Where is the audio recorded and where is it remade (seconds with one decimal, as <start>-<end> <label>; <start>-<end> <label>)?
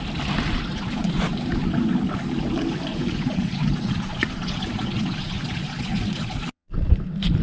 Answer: 0.0-0.7 recorded; 0.7-1.3 remade; 1.3-2.9 recorded; 2.9-6.9 remade; 6.9-7.4 recorded